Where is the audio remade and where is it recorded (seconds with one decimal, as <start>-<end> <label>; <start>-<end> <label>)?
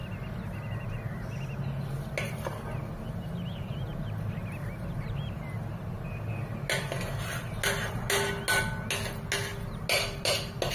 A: 0.0-10.7 recorded